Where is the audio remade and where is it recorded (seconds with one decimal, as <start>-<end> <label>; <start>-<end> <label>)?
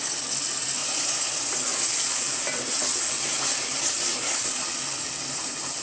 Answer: 0.0-0.8 recorded; 0.8-1.5 remade; 1.5-5.8 recorded